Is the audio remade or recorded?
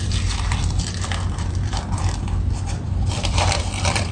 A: remade